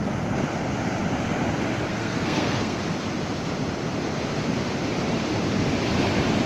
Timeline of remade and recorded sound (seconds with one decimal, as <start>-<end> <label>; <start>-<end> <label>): 0.0-1.9 recorded; 1.9-2.8 remade; 2.8-6.5 recorded